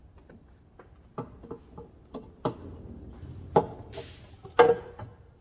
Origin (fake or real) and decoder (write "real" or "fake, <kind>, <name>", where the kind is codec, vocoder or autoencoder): real